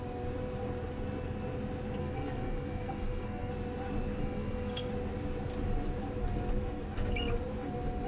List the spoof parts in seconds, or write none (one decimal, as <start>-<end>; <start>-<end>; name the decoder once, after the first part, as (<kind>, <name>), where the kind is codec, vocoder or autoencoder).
2.0-3.5 (codec, SNAC); 4.2-4.9